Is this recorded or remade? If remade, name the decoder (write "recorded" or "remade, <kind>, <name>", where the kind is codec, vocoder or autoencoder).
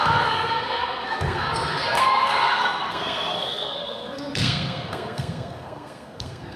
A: remade, codec, SNAC